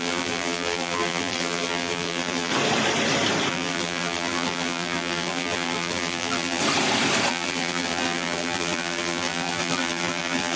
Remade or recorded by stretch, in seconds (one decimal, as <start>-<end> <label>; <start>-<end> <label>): 0.0-2.5 remade; 2.5-3.5 recorded; 3.5-6.6 remade; 6.6-7.3 recorded; 7.3-10.6 remade